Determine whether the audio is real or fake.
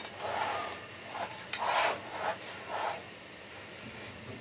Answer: real